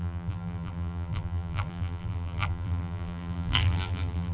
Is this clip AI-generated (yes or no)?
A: yes